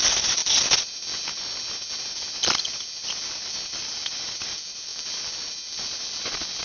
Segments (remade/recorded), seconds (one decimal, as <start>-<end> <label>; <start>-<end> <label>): 0.0-6.6 recorded